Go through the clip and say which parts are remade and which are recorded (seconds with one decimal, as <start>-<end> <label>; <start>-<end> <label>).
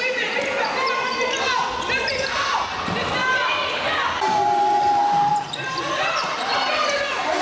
0.0-7.4 recorded